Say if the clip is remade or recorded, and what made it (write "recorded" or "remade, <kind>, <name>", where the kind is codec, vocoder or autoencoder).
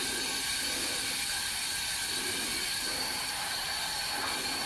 recorded